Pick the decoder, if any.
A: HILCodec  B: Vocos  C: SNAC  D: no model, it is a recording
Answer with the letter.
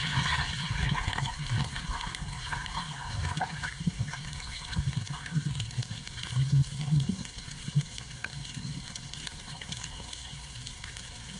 C